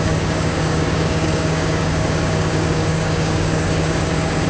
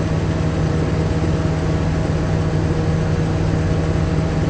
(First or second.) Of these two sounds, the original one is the second